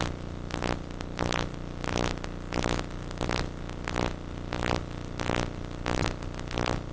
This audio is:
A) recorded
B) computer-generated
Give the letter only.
A